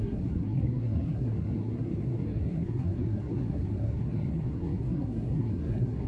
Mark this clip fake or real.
fake